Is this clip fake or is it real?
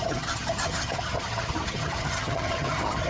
fake